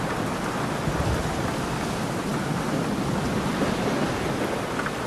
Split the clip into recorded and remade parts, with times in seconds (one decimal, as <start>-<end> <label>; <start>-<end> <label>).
0.0-5.1 recorded

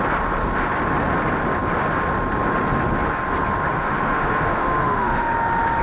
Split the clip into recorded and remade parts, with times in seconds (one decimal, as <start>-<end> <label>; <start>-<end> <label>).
0.0-3.6 recorded; 3.6-5.3 remade; 5.3-5.8 recorded

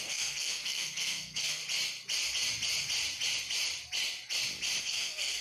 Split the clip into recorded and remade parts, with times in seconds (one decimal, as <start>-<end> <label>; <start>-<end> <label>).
0.0-1.6 remade; 1.6-4.8 recorded; 4.8-5.4 remade

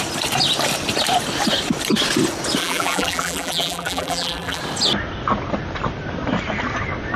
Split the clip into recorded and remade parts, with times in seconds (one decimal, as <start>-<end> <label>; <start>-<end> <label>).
0.0-2.6 recorded; 2.6-4.6 remade; 4.6-7.2 recorded

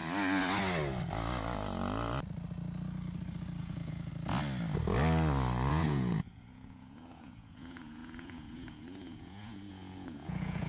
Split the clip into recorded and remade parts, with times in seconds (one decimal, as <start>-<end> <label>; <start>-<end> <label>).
0.0-3.6 recorded; 3.6-4.1 remade; 4.1-5.7 recorded; 5.7-10.7 remade

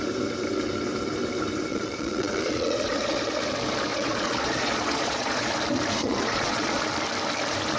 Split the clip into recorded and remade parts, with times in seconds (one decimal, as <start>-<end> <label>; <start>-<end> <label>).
0.0-1.7 recorded; 1.7-3.4 remade; 3.4-3.9 recorded; 3.9-5.5 remade; 5.5-6.0 recorded; 6.0-6.8 remade; 6.8-7.8 recorded